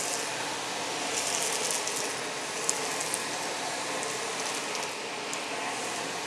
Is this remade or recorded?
recorded